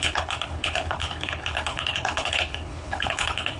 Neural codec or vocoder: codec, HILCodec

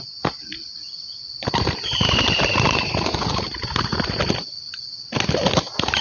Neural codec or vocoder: none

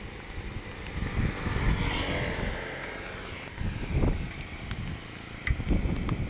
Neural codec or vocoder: none